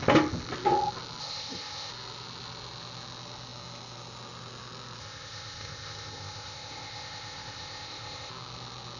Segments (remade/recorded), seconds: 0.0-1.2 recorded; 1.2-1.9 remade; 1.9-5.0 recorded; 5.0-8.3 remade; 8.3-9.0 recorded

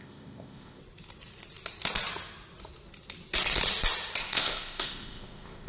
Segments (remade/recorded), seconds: 0.0-0.8 remade; 0.8-4.2 recorded; 4.2-5.7 remade

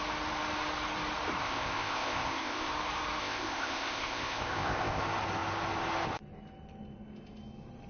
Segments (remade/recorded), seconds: 0.0-1.4 recorded; 1.4-2.7 remade; 2.7-3.2 recorded; 3.2-5.0 remade; 5.0-7.9 recorded

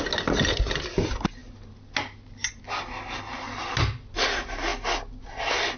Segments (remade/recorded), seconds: 0.0-5.8 recorded

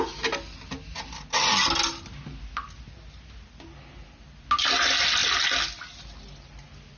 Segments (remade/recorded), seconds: 0.0-7.0 recorded

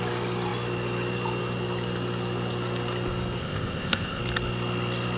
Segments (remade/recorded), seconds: 0.0-3.4 recorded; 3.4-4.2 remade; 4.2-5.2 recorded

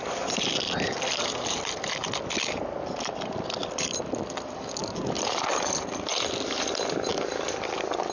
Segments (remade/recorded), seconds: 0.0-8.1 recorded